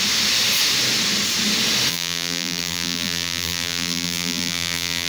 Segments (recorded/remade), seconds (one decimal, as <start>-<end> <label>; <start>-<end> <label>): 0.0-1.9 recorded; 1.9-5.1 remade